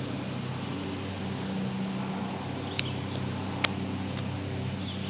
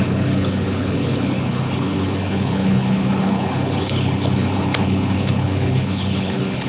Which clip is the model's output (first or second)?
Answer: second